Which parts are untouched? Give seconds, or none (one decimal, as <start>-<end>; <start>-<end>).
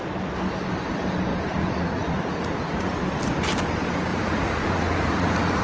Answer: 0.0-1.3; 2.9-4.1